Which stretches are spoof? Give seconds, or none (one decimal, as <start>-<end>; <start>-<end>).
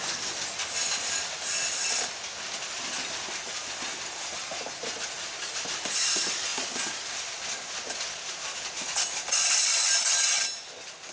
none